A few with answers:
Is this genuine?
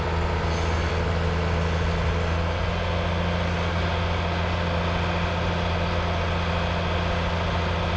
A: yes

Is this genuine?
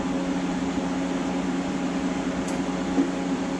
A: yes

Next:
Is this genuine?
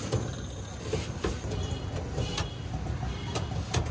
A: yes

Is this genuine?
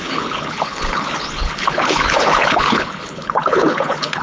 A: no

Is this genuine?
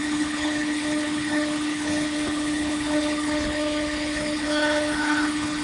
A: no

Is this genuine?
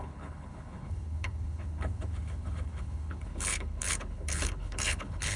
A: no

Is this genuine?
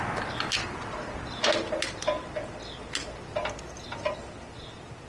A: yes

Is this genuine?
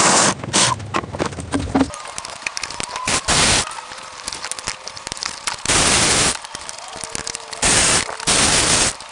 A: yes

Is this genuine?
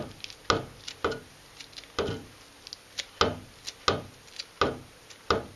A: yes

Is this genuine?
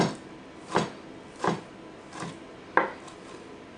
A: yes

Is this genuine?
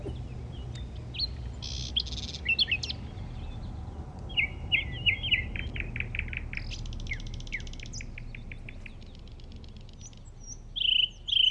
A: yes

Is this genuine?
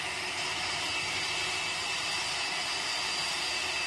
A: yes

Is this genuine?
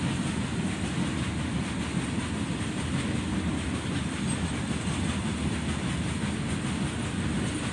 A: yes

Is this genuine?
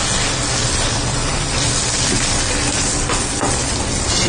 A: yes